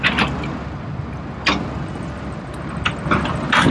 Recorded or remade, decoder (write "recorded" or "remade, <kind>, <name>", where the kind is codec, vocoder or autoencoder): recorded